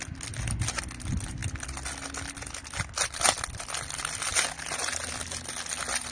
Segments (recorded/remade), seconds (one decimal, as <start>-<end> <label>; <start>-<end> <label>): 0.0-6.1 recorded